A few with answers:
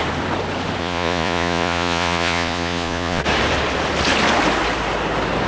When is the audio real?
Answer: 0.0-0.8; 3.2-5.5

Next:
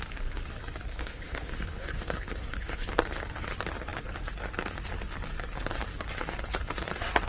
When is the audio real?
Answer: 0.0-0.9; 2.9-7.3

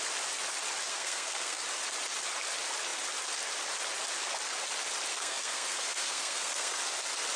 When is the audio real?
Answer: 0.0-0.9; 1.6-5.1; 6.8-7.4

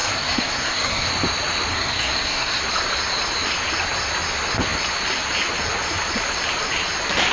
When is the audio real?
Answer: 1.1-1.7; 2.6-7.3

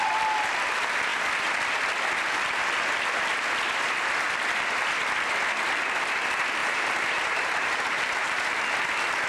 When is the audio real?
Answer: 0.0-6.6; 8.6-9.3

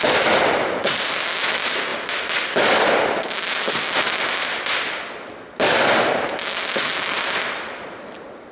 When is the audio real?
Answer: 0.0-8.5

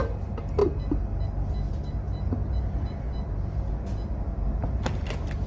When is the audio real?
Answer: 0.0-5.5

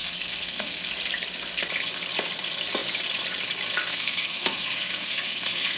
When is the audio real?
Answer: 0.9-3.9